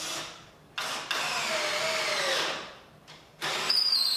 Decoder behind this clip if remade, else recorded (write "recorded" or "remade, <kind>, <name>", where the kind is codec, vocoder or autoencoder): recorded